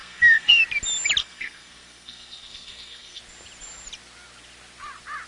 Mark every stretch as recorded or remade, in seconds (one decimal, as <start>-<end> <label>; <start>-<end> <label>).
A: 0.0-0.6 remade; 0.6-1.2 recorded; 1.2-3.2 remade; 3.2-5.3 recorded